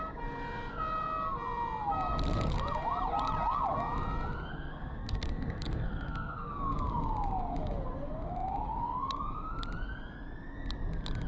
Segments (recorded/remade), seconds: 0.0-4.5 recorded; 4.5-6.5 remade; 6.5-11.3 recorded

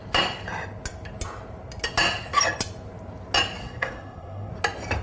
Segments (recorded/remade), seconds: 0.0-3.6 recorded; 3.6-4.5 remade; 4.5-5.0 recorded